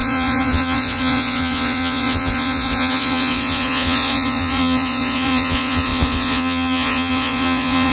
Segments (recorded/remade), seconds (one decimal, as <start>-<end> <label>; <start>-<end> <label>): 0.0-7.9 remade